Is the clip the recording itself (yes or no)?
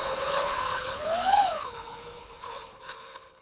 no